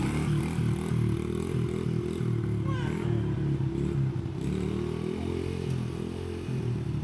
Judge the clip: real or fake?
real